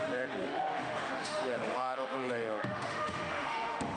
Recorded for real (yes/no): no